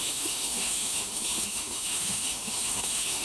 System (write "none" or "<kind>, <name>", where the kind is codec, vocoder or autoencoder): autoencoder, DAC-VAE